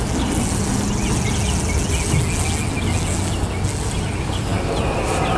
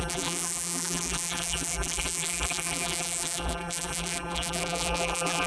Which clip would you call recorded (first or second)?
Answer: first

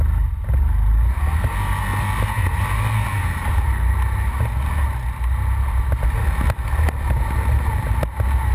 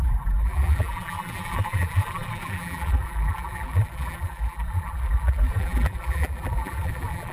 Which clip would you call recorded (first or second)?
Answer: first